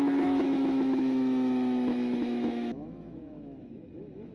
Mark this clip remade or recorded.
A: remade